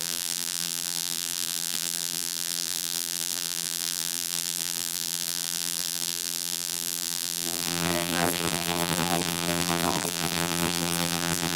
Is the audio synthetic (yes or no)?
yes